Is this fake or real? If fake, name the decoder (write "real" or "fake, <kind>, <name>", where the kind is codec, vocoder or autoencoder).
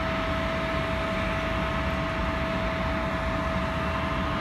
real